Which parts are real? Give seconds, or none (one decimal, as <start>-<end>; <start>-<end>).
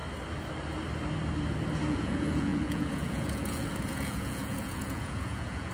0.0-1.9